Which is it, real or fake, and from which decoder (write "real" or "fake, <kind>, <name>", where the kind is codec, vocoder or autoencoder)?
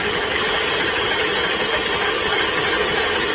real